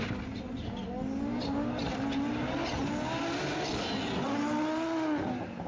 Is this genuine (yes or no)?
yes